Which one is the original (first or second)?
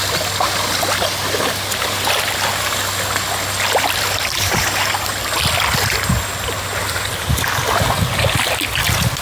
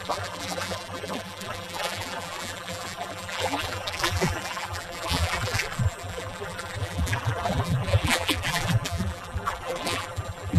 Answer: first